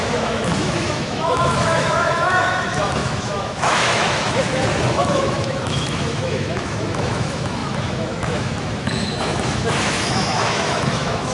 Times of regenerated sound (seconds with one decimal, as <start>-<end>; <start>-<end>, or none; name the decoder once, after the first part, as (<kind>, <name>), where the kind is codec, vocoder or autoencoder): 0.0-11.3 (autoencoder, DAC-VAE)